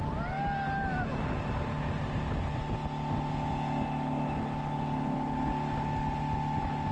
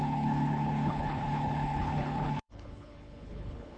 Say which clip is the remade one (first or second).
second